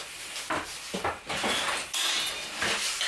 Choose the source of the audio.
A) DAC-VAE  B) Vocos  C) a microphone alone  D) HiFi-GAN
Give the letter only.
C